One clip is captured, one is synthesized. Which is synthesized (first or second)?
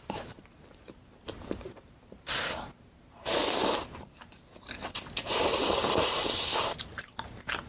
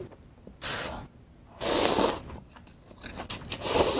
first